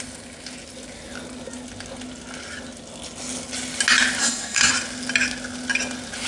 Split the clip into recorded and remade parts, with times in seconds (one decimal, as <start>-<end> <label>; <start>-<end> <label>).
0.0-4.2 recorded; 4.2-4.7 remade; 4.7-6.3 recorded